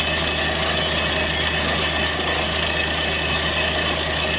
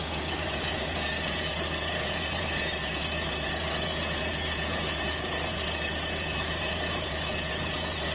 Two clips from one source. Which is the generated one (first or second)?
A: second